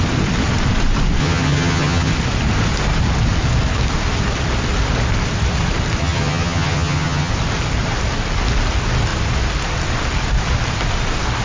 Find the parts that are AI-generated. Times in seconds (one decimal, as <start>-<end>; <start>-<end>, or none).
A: 1.2-2.1; 6.0-7.3

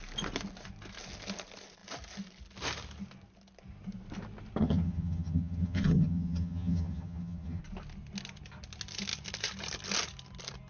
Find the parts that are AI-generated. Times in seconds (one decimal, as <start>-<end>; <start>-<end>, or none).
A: 4.6-7.6

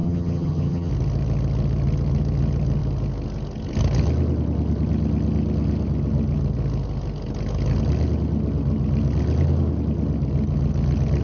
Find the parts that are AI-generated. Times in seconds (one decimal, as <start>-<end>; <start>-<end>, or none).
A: 0.0-0.9

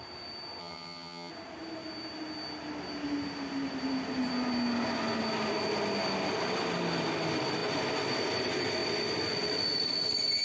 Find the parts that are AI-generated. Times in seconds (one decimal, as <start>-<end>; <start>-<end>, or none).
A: 0.6-1.3

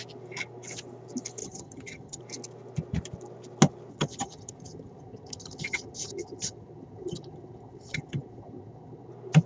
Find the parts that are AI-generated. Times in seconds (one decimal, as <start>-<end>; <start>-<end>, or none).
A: 1.4-2.2; 3.9-9.1

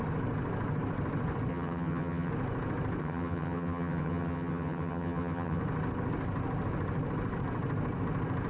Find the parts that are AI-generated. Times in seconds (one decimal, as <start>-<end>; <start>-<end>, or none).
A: 1.5-2.3; 3.0-5.6

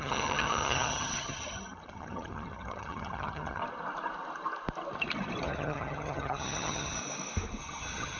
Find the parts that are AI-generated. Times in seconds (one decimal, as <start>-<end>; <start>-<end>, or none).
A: 0.0-3.6; 5.4-7.0; 7.6-8.2

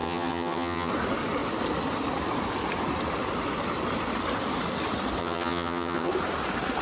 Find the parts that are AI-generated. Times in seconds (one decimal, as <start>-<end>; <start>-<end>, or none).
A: 0.0-0.9; 5.2-6.1